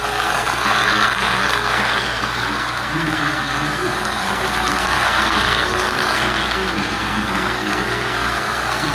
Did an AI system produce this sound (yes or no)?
yes